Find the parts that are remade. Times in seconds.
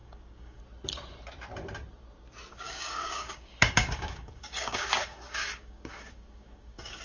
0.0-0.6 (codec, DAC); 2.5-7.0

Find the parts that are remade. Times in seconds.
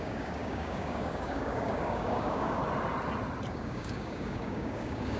0.0-2.6 (codec, DAC); 3.5-5.2